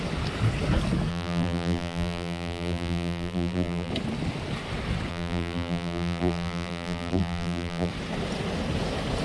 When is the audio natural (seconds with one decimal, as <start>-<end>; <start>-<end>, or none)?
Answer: 0.0-1.1; 3.9-5.1; 7.9-9.2